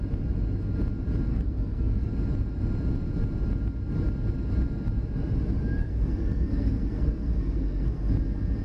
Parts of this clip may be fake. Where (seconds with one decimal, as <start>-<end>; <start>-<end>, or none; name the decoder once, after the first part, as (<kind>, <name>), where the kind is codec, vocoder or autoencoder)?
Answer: 1.3-2.1 (codec, SNAC); 5.8-8.1

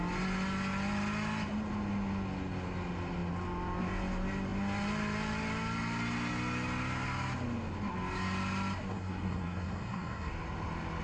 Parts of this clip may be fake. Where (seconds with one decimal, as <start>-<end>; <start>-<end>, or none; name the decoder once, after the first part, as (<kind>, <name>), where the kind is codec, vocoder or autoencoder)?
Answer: 8.9-10.3 (codec, SNAC)

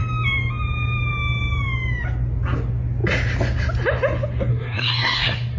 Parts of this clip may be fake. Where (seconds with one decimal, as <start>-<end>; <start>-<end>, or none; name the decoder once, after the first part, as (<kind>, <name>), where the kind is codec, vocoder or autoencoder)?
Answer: 4.5-5.6 (codec, SNAC)

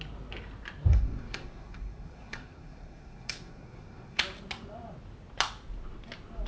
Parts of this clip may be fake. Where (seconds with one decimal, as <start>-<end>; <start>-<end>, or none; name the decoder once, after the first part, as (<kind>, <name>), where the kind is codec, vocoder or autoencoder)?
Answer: 0.9-4.2 (codec, SNAC)

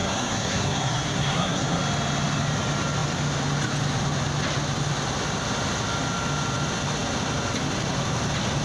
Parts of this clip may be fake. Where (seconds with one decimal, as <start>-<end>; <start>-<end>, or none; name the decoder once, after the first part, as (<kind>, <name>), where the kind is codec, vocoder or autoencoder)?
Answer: 0.0-1.8 (codec, SNAC)

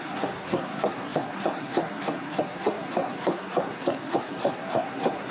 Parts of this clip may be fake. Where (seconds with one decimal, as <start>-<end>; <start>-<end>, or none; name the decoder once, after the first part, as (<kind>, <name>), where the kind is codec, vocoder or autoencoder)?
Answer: 0.0-5.3 (codec, SNAC)

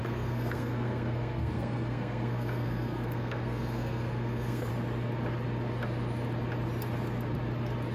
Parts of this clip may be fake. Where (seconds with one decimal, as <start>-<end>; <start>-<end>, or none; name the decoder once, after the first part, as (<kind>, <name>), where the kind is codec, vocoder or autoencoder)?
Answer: 0.0-4.7 (codec, SNAC)

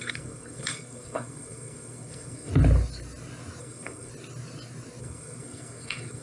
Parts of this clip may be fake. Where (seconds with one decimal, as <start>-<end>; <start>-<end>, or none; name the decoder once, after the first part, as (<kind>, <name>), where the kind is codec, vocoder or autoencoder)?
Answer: 0.0-2.5 (codec, SNAC); 3.6-4.1; 5.0-6.2